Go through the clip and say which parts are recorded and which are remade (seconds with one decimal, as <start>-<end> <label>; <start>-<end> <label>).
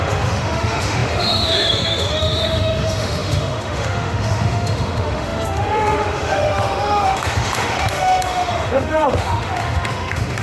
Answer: 0.0-10.4 remade